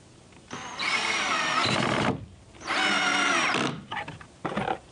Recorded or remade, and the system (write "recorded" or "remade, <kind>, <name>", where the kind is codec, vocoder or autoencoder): recorded